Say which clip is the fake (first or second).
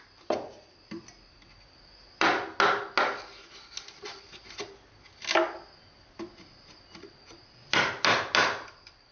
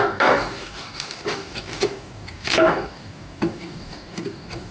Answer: second